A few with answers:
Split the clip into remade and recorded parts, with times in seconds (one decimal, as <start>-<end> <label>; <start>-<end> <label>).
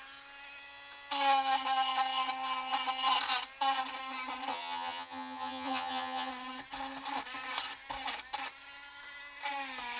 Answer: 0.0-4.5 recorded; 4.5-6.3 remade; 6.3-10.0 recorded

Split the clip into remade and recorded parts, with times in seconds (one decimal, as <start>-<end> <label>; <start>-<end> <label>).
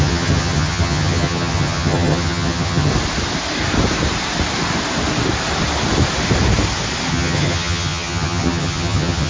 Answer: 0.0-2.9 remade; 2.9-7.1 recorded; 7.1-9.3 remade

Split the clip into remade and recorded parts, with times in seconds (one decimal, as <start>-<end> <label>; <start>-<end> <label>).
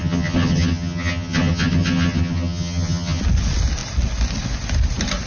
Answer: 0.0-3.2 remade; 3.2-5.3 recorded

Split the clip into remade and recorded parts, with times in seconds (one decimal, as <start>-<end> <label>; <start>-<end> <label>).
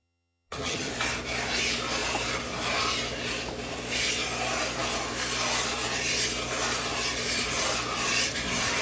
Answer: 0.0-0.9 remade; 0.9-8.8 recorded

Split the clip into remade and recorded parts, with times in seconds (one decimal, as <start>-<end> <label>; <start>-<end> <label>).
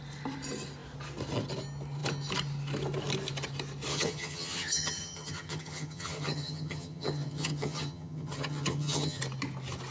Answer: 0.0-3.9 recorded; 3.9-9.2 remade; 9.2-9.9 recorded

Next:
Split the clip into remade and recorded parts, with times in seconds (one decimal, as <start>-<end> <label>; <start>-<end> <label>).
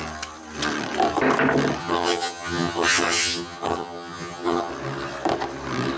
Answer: 0.0-1.8 recorded; 1.8-4.7 remade; 4.7-6.0 recorded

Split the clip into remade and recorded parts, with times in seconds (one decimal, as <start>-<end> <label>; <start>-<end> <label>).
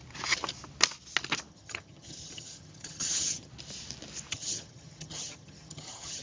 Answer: 0.0-1.5 recorded; 1.5-3.5 remade; 3.5-4.3 recorded; 4.3-6.2 remade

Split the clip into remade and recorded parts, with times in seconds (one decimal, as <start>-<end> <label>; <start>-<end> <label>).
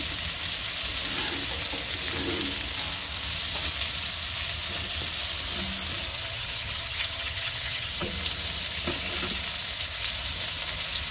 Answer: 0.0-6.1 recorded; 6.1-8.1 remade; 8.1-11.1 recorded